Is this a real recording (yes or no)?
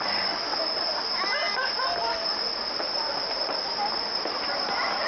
yes